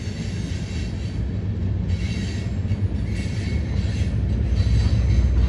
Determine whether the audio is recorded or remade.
recorded